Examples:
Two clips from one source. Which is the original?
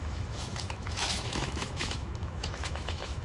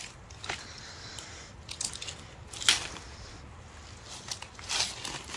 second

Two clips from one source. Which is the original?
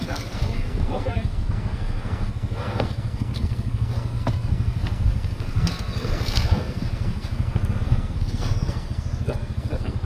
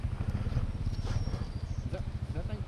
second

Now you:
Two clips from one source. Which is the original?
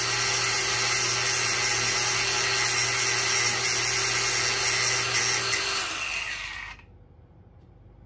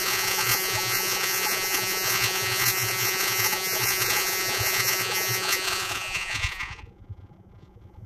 first